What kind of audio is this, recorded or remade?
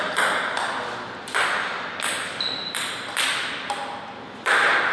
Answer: recorded